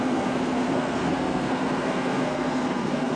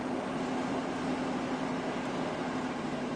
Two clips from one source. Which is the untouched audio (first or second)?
second